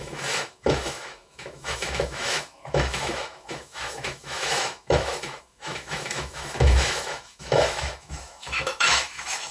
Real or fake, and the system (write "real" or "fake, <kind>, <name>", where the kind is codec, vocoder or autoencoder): fake, autoencoder, DAC-VAE